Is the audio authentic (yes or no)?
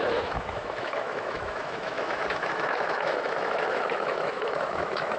no